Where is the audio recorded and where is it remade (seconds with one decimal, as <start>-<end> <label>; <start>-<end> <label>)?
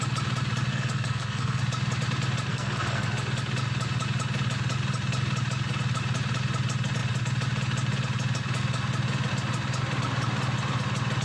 0.0-0.7 recorded; 0.7-1.6 remade; 1.6-2.5 recorded; 2.5-3.1 remade; 3.1-11.2 recorded